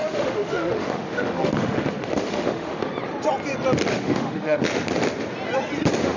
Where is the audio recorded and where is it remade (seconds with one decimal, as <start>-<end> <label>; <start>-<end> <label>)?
0.0-2.9 remade; 2.9-3.9 recorded; 3.9-4.6 remade; 4.6-6.2 recorded